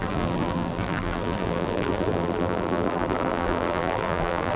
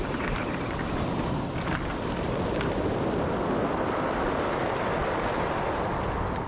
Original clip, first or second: second